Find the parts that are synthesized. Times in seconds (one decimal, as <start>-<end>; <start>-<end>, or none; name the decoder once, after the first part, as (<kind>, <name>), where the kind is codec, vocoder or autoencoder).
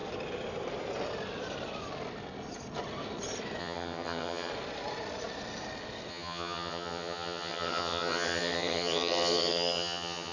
3.6-4.5 (vocoder, HiFi-GAN); 6.1-10.3